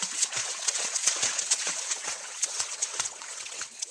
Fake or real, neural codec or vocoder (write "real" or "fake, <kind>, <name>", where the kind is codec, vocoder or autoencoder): fake, vocoder, WaveNeXt